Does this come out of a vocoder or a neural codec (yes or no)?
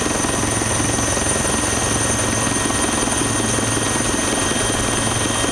no